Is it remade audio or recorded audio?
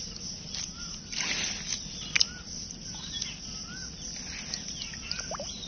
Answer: recorded